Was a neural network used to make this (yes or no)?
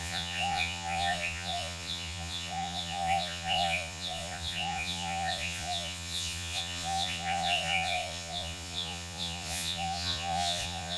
yes